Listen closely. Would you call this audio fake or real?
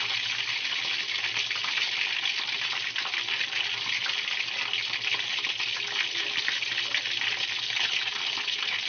real